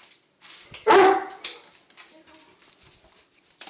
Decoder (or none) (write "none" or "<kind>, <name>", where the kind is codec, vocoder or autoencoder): none